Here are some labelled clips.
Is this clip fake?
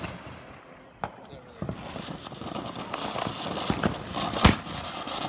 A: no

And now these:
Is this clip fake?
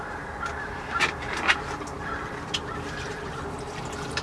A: yes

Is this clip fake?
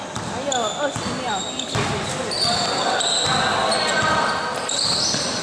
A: no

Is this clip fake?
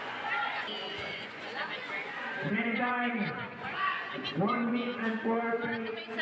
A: yes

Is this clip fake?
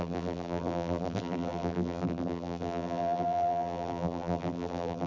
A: yes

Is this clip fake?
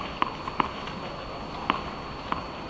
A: no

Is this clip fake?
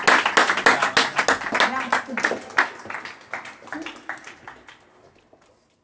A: no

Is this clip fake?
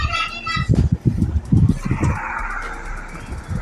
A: no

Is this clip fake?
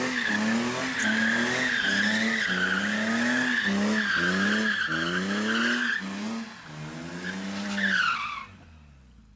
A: no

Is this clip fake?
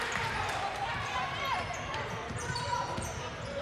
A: yes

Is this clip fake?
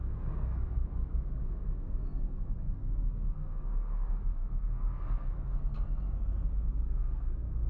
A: yes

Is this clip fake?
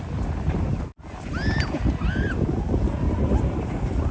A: yes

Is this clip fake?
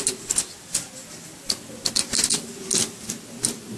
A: no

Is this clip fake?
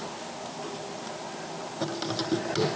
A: no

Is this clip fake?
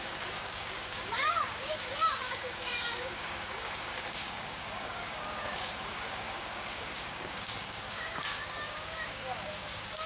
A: yes